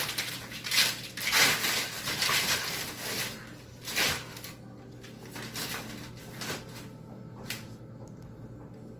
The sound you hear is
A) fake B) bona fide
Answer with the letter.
B